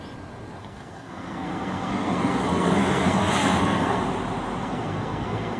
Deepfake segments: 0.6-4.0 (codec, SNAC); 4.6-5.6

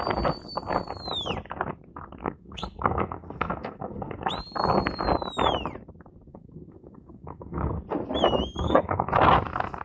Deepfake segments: 2.2-4.3 (codec, SNAC); 6.3-7.8; 8.6-9.1